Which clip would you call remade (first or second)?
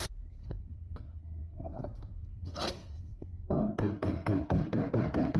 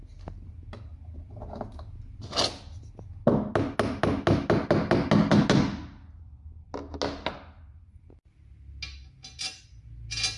first